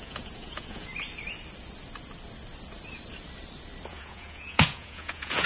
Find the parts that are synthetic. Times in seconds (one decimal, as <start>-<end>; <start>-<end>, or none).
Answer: 0.0-0.9; 3.9-5.5